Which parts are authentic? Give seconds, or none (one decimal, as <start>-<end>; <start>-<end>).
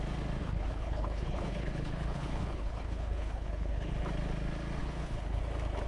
0.0-0.4; 3.9-4.8; 5.4-5.9